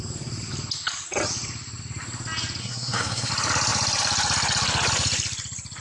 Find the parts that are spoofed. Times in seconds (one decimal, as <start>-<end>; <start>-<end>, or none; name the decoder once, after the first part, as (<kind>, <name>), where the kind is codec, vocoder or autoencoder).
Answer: 2.6-3.3 (codec, SNAC)